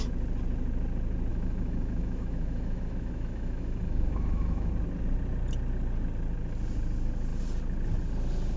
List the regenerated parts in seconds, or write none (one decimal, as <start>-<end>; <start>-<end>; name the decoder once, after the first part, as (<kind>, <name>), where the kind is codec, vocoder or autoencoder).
1.3-4.7 (autoencoder, DAC-VAE)